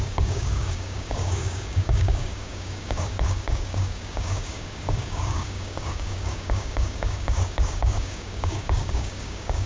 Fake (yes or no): yes